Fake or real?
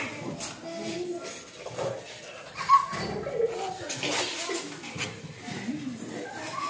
real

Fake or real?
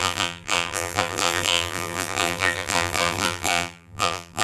fake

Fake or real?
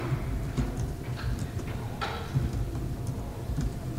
fake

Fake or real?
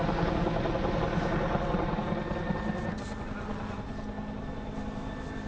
real